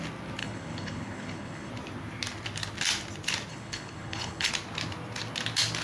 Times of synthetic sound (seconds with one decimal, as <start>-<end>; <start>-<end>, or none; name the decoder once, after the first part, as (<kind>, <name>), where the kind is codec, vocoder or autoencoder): 0.4-1.7 (codec, HILCodec); 3.5-4.5